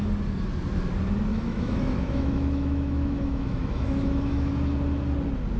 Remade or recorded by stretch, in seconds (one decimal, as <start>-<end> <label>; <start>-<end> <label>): 0.0-1.3 recorded; 1.3-4.5 remade; 4.5-5.6 recorded